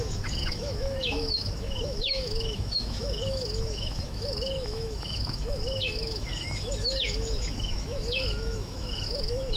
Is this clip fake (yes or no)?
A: yes